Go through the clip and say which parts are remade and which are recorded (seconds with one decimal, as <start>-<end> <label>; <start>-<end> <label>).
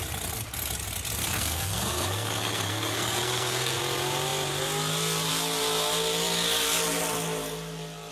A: 0.0-1.2 recorded; 1.2-3.8 remade; 3.8-8.1 recorded